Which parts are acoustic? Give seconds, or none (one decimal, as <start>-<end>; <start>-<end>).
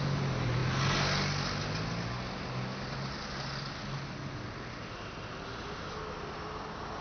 0.0-7.0